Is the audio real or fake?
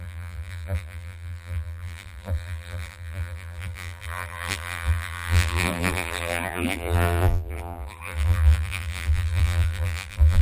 fake